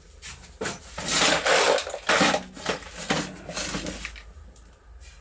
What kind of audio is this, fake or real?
real